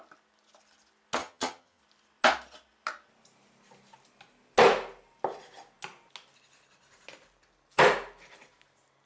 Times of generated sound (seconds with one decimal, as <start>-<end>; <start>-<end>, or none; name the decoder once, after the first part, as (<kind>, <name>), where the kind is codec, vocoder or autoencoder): 1.2-1.8 (vocoder, HiFi-GAN)